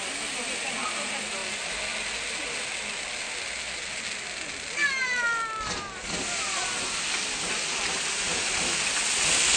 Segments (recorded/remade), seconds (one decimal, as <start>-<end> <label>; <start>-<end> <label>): 0.0-9.6 recorded